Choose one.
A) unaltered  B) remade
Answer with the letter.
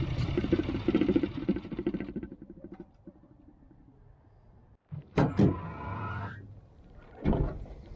B